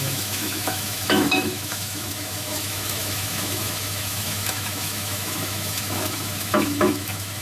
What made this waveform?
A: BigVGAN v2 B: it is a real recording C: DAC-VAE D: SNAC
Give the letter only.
C